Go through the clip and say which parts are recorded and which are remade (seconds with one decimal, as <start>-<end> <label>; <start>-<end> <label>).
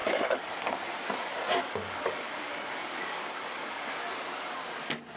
0.0-0.5 remade; 0.5-1.3 recorded; 1.3-3.9 remade; 3.9-5.2 recorded